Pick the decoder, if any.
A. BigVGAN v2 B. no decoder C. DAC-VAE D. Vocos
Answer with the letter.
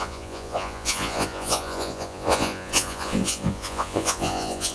D